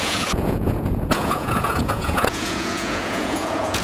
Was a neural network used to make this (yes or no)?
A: yes